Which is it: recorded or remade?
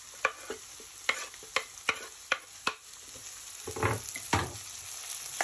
recorded